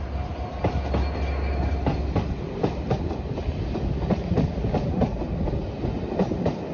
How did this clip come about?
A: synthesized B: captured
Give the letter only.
B